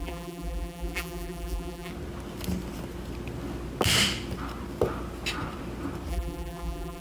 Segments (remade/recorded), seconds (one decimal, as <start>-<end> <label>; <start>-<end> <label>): 0.0-1.9 remade; 1.9-6.1 recorded; 6.1-7.0 remade

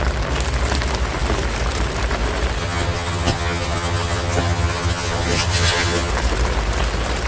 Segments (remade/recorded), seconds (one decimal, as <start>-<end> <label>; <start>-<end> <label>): 0.0-2.6 recorded; 2.6-6.1 remade; 6.1-7.3 recorded

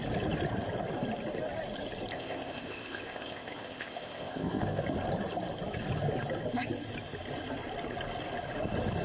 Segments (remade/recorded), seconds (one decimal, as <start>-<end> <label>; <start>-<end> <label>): 0.0-2.1 recorded; 2.1-4.8 remade; 4.8-9.0 recorded

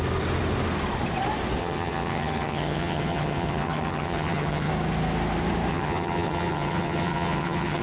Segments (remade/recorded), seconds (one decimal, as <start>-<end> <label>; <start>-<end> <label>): 0.0-1.6 recorded; 1.6-4.7 remade; 4.7-5.7 recorded; 5.7-7.8 remade